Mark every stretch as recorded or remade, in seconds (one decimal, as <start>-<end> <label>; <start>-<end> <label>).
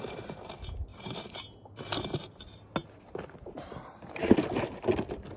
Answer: 0.0-5.4 recorded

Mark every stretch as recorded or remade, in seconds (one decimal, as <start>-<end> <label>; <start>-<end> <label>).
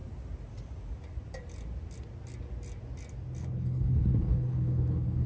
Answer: 0.0-3.4 recorded; 3.4-5.3 remade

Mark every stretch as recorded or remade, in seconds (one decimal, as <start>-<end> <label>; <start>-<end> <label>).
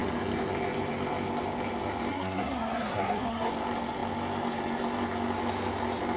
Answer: 0.0-2.1 recorded; 2.1-3.5 remade; 3.5-6.2 recorded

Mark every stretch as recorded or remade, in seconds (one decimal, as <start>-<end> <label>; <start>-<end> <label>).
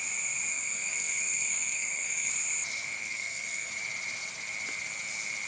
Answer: 0.0-0.5 recorded; 0.5-2.3 remade; 2.3-3.0 recorded; 3.0-3.7 remade; 3.7-5.5 recorded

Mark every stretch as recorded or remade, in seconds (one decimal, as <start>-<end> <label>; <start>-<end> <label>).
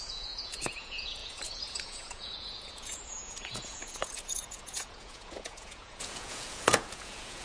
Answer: 0.0-7.4 remade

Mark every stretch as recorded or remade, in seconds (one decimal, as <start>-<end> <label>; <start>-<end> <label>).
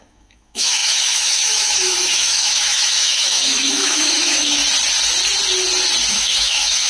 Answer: 0.0-4.6 remade; 4.6-6.1 recorded; 6.1-6.9 remade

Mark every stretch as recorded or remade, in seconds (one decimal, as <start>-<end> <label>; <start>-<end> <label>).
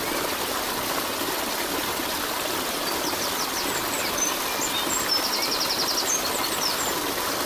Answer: 0.0-7.5 recorded